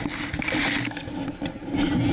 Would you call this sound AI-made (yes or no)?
no